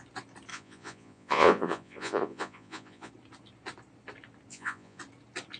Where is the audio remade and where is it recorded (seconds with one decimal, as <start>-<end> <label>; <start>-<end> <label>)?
0.0-0.5 recorded; 0.5-3.1 remade; 3.1-4.5 recorded; 4.5-5.0 remade; 5.0-5.6 recorded